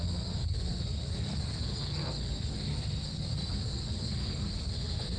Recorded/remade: remade